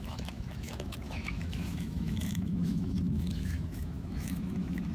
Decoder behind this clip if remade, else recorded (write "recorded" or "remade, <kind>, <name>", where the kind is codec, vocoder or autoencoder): remade, autoencoder, DAC-VAE